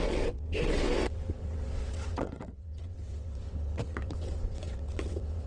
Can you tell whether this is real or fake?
fake